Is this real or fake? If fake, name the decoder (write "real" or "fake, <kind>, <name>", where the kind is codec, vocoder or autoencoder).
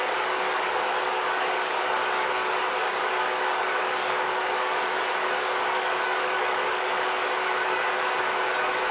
fake, codec, DAC